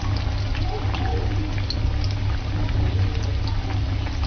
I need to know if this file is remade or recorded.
recorded